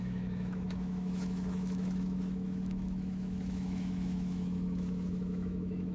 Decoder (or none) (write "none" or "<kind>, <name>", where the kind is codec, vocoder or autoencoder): autoencoder, DAC-VAE